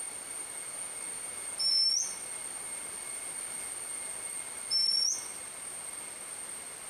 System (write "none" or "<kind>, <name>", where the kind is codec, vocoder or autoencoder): none